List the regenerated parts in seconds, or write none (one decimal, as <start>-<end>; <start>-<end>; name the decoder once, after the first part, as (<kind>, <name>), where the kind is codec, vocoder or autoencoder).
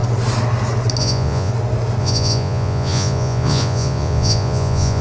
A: 1.0-1.5 (vocoder, Vocos); 2.0-5.0